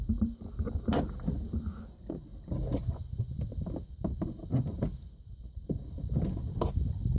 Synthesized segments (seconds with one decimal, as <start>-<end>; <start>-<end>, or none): none